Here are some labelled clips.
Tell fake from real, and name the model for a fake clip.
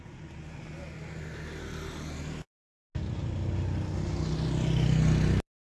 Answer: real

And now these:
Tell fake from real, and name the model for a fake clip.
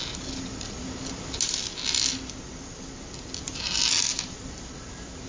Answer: real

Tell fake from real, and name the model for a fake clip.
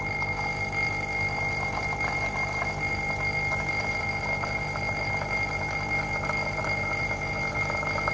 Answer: real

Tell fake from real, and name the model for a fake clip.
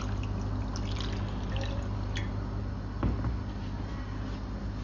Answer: real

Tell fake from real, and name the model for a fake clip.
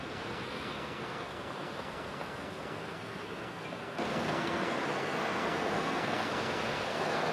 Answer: fake, codec, SNAC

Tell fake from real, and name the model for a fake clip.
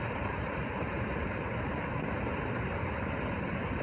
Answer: real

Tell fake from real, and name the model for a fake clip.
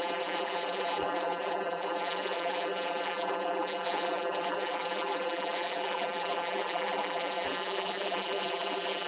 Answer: fake, vocoder, BigVGAN v2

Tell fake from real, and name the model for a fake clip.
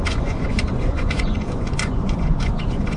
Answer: fake, vocoder, Vocos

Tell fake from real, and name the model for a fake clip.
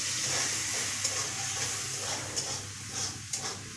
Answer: real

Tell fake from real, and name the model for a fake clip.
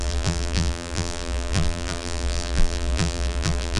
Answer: fake, vocoder, BigVGAN v2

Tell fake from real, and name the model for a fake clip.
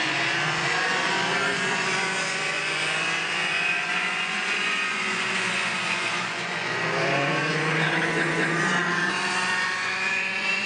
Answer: fake, vocoder, Vocos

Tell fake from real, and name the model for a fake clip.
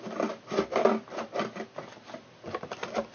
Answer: real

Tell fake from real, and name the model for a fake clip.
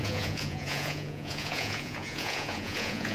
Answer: fake, vocoder, Vocos